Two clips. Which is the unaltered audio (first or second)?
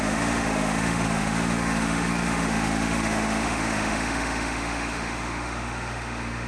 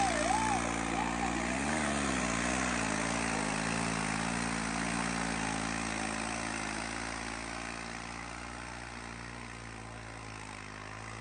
second